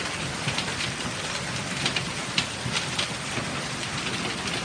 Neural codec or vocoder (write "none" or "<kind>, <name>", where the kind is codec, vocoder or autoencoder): none